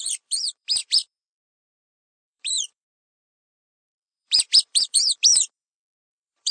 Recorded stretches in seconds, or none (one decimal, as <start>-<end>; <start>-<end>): none